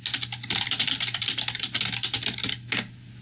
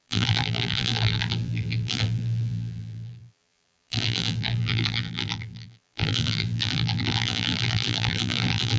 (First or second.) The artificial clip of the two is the second